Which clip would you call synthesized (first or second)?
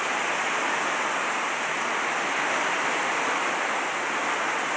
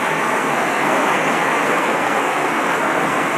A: second